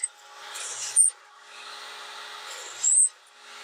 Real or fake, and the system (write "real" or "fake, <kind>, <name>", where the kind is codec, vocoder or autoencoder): real